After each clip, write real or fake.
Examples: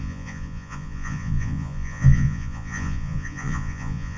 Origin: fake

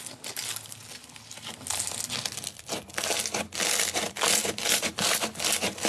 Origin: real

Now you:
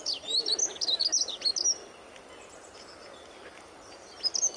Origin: real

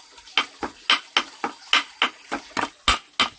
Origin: real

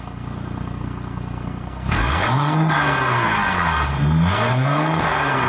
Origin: fake